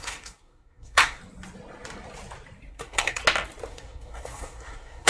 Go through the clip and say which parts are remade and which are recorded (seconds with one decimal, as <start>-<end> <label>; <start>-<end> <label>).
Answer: 0.0-1.2 remade; 1.2-2.7 recorded; 2.7-3.2 remade; 3.2-3.7 recorded; 3.7-5.1 remade